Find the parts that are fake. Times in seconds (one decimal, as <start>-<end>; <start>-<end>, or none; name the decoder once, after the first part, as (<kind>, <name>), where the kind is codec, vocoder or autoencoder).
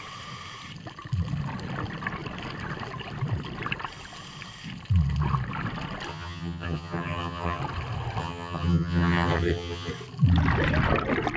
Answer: 6.1-7.6 (vocoder, HiFi-GAN); 8.2-9.9